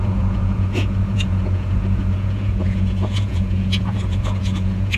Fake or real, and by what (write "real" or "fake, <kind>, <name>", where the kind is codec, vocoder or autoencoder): fake, vocoder, Vocos